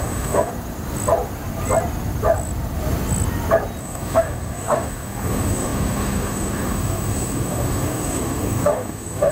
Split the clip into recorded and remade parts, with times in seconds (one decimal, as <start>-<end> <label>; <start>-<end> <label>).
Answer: 0.0-0.5 remade; 0.5-3.8 recorded; 3.8-9.3 remade

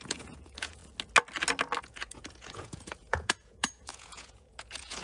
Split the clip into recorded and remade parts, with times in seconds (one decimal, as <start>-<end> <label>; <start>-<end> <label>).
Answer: 0.0-0.8 remade; 0.8-1.8 recorded; 1.8-5.0 remade